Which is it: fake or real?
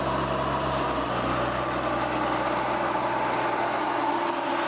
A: real